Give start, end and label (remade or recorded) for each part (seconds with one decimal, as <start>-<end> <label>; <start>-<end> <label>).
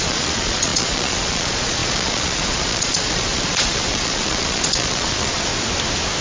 0.0-5.5 remade; 5.5-6.2 recorded